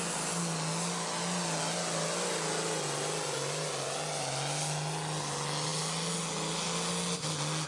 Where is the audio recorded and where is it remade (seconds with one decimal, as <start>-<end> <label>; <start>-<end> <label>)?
0.0-7.7 recorded